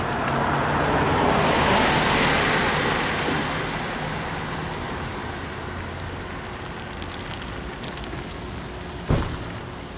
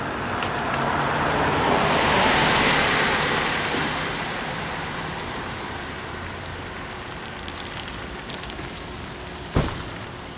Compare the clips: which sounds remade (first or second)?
second